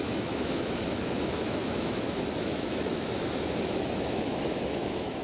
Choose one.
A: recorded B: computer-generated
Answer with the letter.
B